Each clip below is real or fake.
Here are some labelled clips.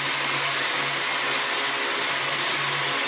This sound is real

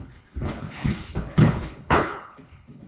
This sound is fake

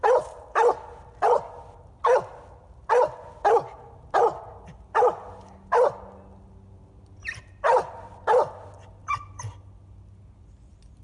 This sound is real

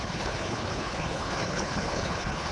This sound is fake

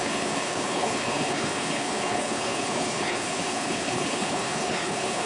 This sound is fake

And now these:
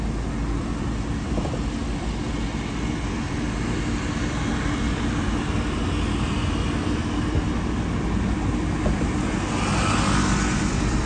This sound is real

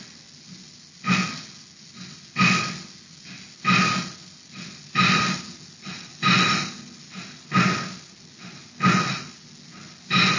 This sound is real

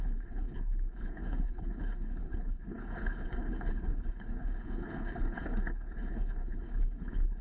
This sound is fake